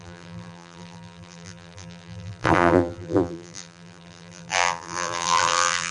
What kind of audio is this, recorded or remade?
remade